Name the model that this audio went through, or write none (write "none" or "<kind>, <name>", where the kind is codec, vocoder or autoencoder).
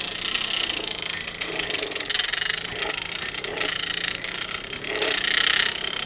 none